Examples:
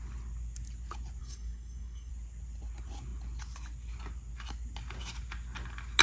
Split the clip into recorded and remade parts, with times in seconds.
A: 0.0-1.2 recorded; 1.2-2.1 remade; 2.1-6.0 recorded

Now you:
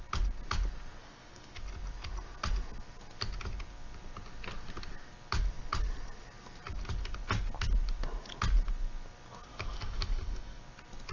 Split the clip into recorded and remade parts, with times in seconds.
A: 0.0-1.0 recorded; 1.0-1.6 remade; 1.6-9.5 recorded; 9.5-10.6 remade; 10.6-11.1 recorded

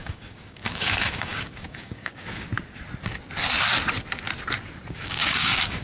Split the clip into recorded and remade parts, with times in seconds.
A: 0.0-2.5 remade; 2.5-4.9 recorded; 4.9-5.8 remade

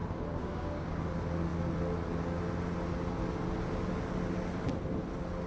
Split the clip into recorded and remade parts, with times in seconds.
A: 0.0-1.0 remade; 1.0-5.5 recorded

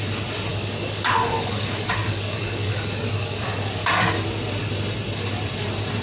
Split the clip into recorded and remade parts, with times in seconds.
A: 0.0-0.5 recorded; 0.5-4.1 remade; 4.1-6.0 recorded